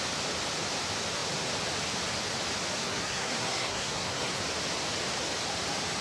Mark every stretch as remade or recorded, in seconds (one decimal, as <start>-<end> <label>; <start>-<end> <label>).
0.0-2.8 recorded; 2.8-4.4 remade; 4.4-6.0 recorded